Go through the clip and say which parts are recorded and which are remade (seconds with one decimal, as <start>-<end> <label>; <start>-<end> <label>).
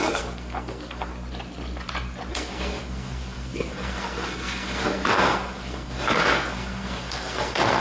0.0-1.1 remade; 1.1-2.3 recorded; 2.3-7.8 remade